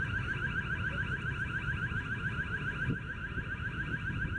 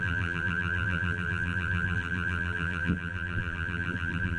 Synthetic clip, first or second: second